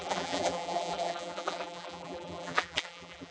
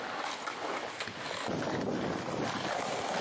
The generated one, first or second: first